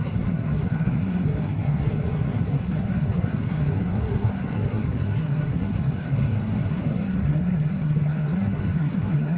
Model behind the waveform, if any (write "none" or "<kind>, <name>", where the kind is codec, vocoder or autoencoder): codec, SNAC